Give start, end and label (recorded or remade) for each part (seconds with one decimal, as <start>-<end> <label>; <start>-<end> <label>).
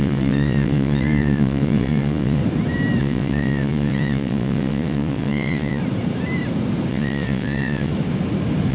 0.0-2.4 remade; 2.4-3.0 recorded; 3.0-5.8 remade; 5.8-6.9 recorded; 6.9-7.9 remade; 7.9-8.7 recorded